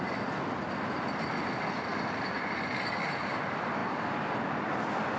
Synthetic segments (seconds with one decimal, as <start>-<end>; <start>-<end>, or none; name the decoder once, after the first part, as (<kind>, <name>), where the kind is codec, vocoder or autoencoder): none